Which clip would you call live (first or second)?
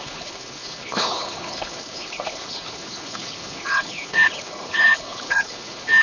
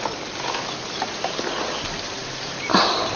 second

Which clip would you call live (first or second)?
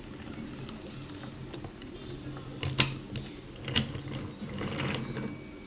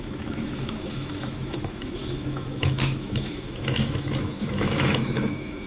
first